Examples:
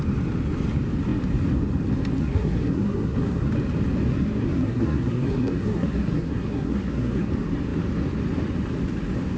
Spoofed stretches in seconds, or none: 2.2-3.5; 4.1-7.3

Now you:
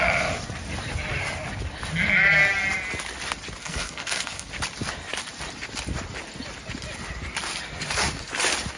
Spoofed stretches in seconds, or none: 3.6-4.5

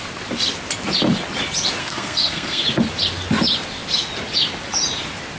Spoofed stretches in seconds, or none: 1.8-2.6

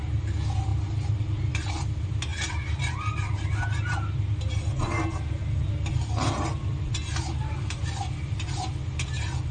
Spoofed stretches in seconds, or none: none

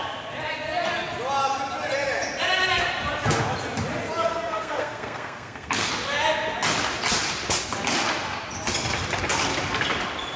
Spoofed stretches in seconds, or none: 4.3-5.9

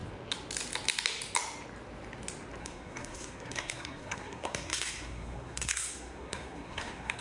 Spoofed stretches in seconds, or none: 2.6-7.2